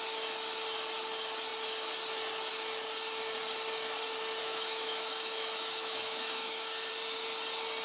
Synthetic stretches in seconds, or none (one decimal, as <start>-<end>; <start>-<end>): 4.4-6.9